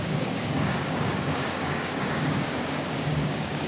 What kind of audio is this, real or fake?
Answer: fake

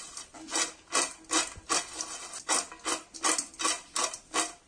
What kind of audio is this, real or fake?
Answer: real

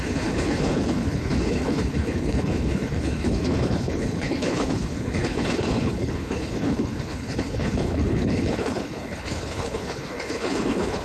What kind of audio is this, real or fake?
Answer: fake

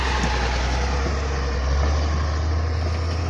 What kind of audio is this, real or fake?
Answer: real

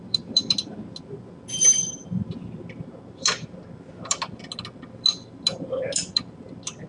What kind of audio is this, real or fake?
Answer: real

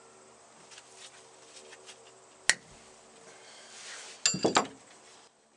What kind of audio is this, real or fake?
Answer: real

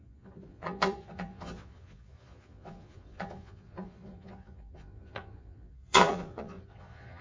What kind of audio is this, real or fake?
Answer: fake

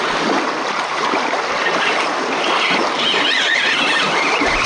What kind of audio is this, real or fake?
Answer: real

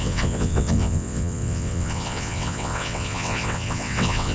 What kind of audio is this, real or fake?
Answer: fake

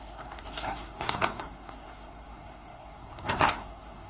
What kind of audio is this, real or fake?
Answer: fake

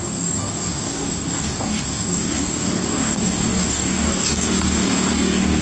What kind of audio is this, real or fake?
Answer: fake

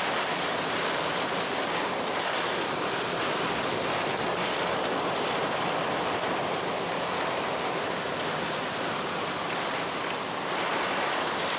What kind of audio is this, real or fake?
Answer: real